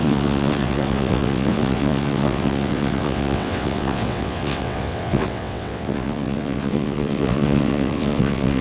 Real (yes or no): no